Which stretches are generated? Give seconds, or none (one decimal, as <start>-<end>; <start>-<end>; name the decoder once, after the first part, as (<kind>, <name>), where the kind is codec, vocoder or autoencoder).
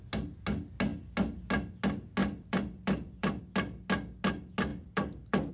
2.2-3.4 (vocoder, BigVGAN v2); 4.7-5.5